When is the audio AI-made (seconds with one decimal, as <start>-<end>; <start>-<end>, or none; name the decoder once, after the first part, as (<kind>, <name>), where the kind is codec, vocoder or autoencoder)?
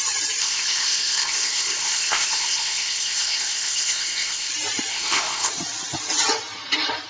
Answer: 0.4-4.5 (codec, ZipCodec); 4.9-5.5